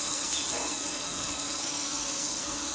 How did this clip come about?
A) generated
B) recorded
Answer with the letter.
A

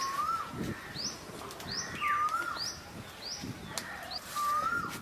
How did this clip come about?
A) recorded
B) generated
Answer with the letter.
A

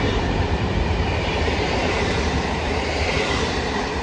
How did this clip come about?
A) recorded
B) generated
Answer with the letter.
B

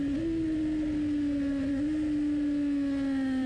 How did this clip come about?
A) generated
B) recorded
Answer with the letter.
B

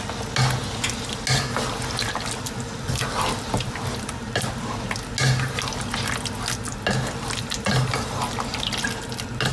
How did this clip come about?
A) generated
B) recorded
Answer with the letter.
B